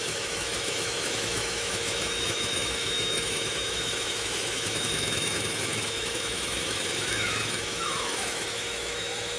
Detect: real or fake fake